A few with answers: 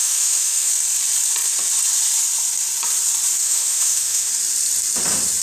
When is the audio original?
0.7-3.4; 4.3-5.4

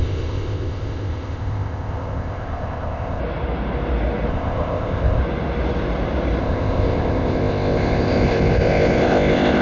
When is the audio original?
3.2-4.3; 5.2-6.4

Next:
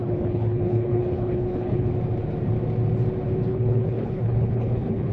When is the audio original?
1.9-3.5